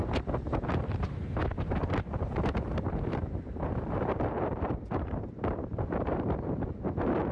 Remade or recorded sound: remade